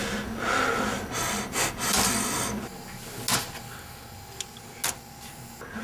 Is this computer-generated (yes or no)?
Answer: no